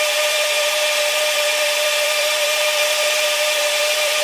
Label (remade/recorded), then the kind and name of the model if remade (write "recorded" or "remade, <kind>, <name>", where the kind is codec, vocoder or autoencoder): remade, vocoder, BigVGAN v2